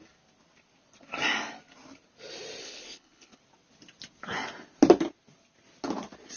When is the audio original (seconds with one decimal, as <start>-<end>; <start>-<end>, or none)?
0.0-2.6; 3.4-6.4